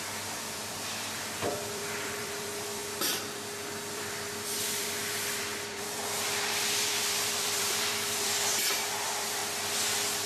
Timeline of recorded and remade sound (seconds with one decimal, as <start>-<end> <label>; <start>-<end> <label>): 0.0-2.8 remade; 2.8-3.9 recorded; 3.9-9.4 remade; 9.4-10.3 recorded